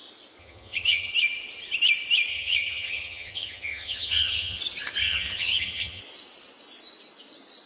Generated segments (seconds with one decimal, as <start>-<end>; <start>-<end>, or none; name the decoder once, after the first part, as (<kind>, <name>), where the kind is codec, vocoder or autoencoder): 0.4-1.1 (vocoder, HiFi-GAN); 2.3-4.6; 5.0-6.0

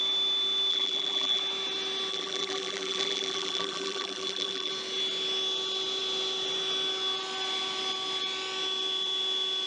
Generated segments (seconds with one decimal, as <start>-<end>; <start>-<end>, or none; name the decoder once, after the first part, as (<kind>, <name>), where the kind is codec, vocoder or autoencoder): 0.7-1.4 (vocoder, BigVGAN v2); 2.1-4.7

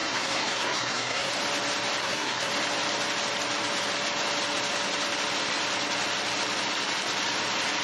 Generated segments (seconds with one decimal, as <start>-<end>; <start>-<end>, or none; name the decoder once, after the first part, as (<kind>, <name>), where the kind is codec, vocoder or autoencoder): 0.0-1.3 (codec, SNAC); 2.0-2.5

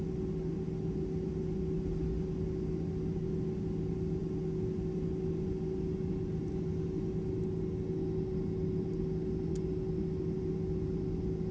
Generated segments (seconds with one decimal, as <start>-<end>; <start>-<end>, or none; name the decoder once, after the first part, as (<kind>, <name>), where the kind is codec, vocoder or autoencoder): none

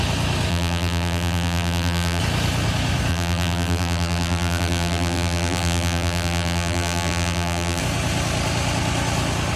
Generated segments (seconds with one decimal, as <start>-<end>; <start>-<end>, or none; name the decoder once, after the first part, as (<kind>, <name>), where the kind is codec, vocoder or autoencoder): 0.5-2.2 (vocoder, BigVGAN v2); 3.1-7.8

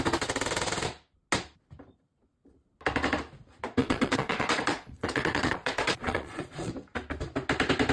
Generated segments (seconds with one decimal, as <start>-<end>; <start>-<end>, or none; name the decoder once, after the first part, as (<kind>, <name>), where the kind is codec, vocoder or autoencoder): 3.8-6.7 (vocoder, Vocos)

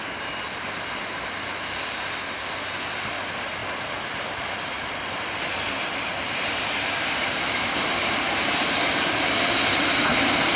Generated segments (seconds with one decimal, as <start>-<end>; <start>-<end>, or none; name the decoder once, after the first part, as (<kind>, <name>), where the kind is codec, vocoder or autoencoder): 6.2-9.3 (vocoder, BigVGAN v2)